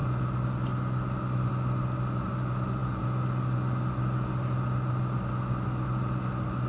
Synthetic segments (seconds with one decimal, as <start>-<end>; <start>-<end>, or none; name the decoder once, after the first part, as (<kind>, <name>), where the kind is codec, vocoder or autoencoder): none